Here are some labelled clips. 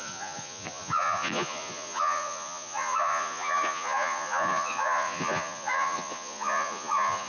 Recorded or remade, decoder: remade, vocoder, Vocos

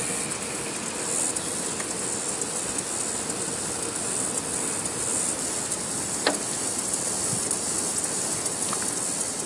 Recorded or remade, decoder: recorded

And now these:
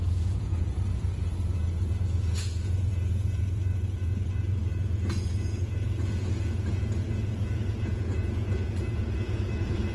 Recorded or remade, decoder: remade, vocoder, Vocos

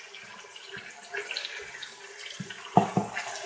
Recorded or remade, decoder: recorded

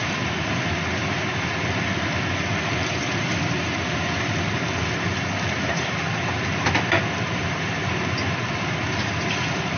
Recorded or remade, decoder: recorded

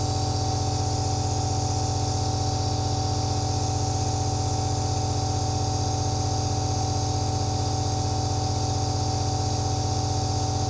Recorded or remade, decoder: recorded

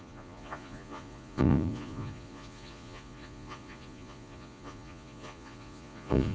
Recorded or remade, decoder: remade, vocoder, Vocos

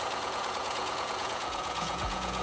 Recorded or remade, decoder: remade, vocoder, Vocos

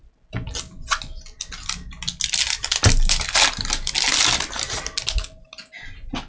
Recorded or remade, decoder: recorded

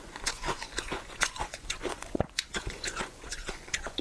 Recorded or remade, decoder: remade, vocoder, Vocos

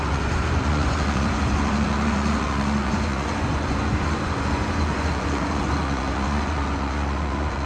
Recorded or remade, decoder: remade, vocoder, Vocos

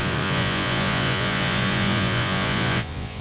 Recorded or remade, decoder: remade, vocoder, Vocos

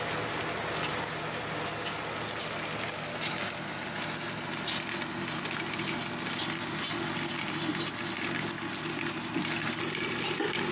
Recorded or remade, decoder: recorded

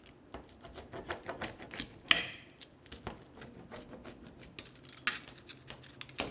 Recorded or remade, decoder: recorded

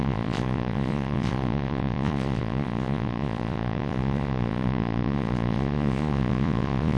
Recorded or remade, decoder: remade, vocoder, Vocos